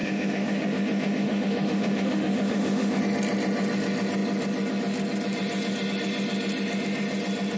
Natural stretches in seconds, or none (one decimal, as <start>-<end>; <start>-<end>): 3.0-7.6